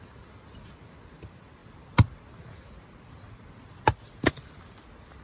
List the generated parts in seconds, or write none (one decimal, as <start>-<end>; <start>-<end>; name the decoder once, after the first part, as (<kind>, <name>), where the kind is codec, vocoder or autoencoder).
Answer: none